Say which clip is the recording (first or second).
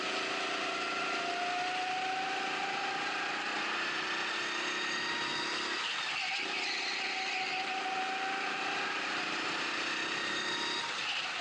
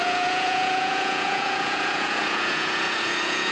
first